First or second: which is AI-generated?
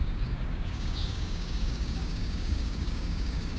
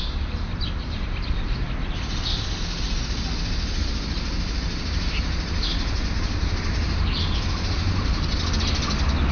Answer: first